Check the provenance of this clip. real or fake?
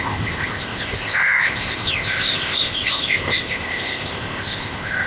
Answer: fake